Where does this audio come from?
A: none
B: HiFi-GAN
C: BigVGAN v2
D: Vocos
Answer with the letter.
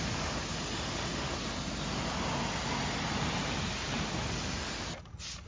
A